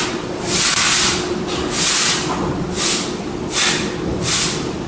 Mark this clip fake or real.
real